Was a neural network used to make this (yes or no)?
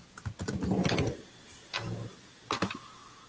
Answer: no